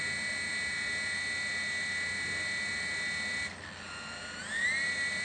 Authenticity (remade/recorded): recorded